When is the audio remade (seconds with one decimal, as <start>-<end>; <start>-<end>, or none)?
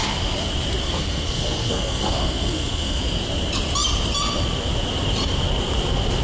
0.8-3.0